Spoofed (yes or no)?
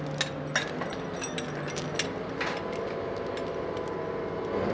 no